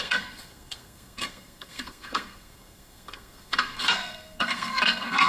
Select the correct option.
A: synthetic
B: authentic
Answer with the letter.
A